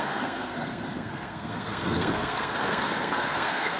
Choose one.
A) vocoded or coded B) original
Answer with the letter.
A